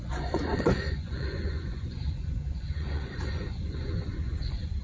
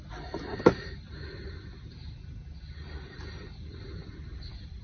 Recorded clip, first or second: second